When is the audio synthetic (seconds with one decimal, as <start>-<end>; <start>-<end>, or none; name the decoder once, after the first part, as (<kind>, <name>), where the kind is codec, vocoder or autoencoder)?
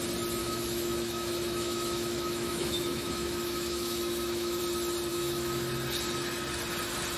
0.4-4.6 (autoencoder, DAC-VAE); 5.1-5.7